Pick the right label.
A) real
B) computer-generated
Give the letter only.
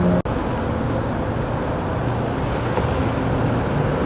A